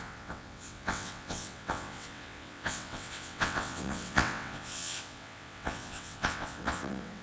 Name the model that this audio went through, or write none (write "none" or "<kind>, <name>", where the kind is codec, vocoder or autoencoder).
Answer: vocoder, WaveNeXt